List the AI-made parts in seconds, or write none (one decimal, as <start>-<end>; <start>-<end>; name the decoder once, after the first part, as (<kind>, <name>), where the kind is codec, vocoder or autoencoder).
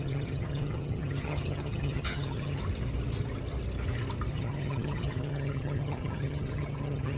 0.0-2.6 (vocoder, HiFi-GAN); 4.3-7.2